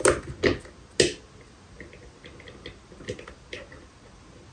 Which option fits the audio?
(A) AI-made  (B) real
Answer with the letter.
B